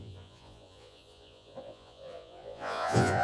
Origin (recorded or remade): remade